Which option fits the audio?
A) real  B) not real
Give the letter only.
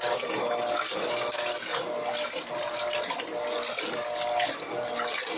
A